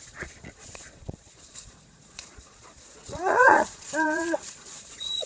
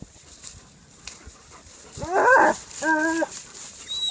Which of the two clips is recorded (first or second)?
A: second